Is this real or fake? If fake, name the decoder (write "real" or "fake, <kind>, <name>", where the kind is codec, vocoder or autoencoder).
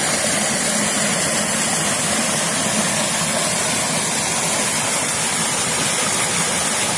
real